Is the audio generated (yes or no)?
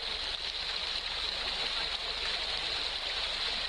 no